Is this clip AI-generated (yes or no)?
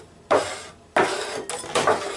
no